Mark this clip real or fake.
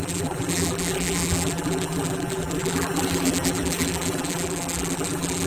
fake